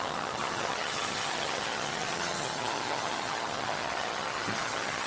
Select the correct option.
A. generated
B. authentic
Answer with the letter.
A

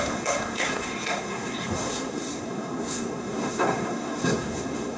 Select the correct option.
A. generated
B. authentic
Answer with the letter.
A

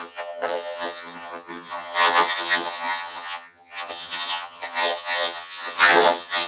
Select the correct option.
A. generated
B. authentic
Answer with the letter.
A